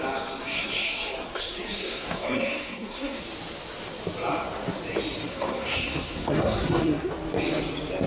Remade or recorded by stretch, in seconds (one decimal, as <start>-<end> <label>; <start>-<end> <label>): 0.0-0.4 recorded; 0.4-3.2 remade; 3.2-5.3 recorded; 5.3-7.1 remade; 7.1-8.1 recorded